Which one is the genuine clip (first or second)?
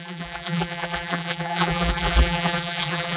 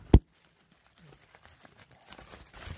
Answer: second